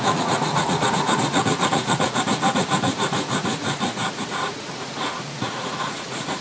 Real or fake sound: fake